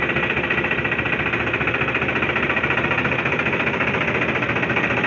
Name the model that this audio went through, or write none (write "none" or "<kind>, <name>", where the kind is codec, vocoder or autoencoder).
none